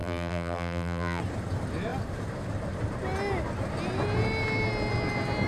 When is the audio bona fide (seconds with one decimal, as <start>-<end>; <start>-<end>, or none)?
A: 1.2-5.5